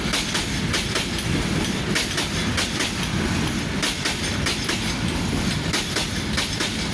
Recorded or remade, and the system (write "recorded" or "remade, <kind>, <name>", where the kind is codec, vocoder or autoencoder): recorded